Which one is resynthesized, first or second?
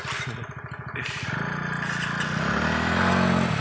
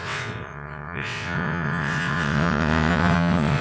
second